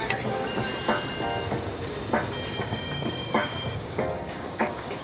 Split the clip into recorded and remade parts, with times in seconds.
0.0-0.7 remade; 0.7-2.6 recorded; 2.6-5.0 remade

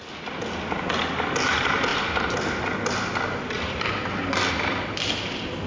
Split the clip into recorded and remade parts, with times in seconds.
0.0-5.7 recorded

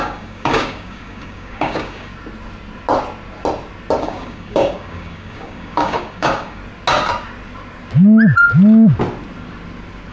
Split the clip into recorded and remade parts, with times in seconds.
0.0-2.1 remade; 2.1-4.0 recorded; 4.0-6.6 remade; 6.6-10.1 recorded

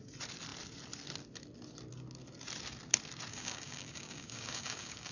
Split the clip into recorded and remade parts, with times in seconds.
0.0-3.3 recorded; 3.3-5.1 remade

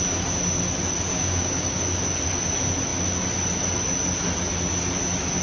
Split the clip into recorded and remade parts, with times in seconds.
0.0-1.1 recorded; 1.1-1.8 remade; 1.8-5.4 recorded

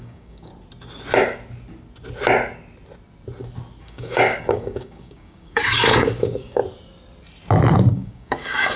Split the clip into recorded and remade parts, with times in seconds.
0.0-0.5 remade; 0.5-3.8 recorded; 3.8-6.6 remade; 6.6-7.9 recorded; 7.9-8.8 remade

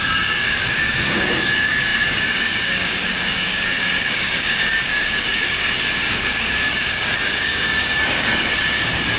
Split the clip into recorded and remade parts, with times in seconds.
0.0-9.2 remade